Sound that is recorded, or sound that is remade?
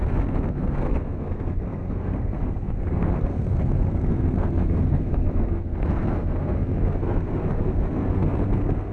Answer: remade